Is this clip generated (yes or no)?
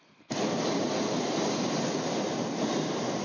no